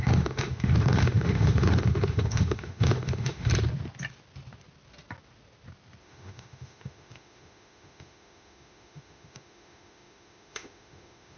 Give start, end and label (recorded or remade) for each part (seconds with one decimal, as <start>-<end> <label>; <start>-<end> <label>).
0.0-3.5 remade; 3.5-6.0 recorded; 6.0-11.4 remade